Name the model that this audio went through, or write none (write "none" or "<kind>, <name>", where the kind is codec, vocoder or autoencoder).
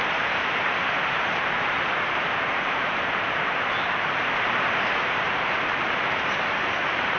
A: vocoder, BigVGAN v2